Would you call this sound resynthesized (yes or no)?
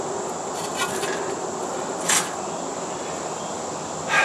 no